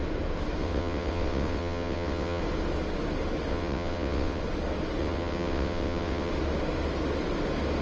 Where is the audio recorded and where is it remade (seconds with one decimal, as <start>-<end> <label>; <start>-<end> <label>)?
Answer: 0.0-0.6 recorded; 0.6-2.4 remade; 2.4-3.5 recorded; 3.5-4.4 remade; 4.4-5.0 recorded; 5.0-6.3 remade; 6.3-7.8 recorded